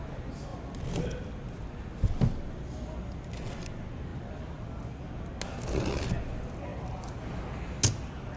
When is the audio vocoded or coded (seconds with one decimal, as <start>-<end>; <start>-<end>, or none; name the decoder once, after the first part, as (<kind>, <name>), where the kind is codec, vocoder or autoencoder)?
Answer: none